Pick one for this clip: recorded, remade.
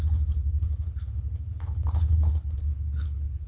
remade